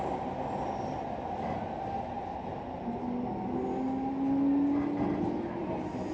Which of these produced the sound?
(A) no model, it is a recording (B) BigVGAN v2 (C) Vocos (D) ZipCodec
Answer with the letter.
A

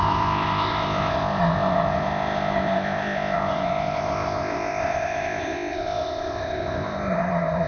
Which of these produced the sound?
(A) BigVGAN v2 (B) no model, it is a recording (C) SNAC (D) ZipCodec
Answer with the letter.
D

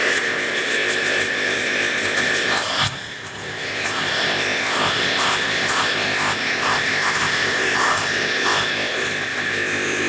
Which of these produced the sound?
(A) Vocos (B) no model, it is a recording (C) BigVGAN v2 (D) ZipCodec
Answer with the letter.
D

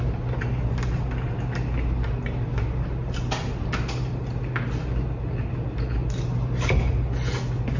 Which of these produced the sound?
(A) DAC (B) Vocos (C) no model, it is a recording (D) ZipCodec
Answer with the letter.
C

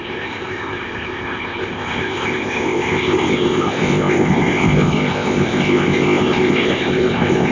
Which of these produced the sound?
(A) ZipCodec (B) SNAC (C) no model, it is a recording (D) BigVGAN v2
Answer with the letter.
A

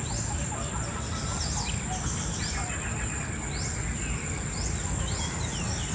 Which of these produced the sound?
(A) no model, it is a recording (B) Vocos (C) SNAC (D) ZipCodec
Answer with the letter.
A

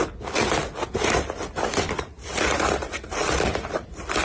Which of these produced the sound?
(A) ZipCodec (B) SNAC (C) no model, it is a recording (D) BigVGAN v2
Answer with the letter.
C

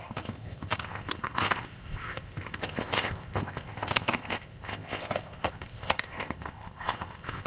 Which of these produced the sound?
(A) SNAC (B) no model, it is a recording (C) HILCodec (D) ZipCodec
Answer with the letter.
D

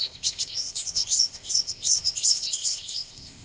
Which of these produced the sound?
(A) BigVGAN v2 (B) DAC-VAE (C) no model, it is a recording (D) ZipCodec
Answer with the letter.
D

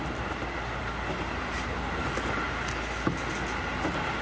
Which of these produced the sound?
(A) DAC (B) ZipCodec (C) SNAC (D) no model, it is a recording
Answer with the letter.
D